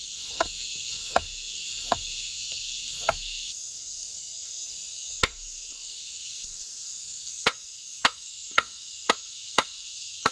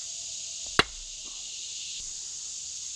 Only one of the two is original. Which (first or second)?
second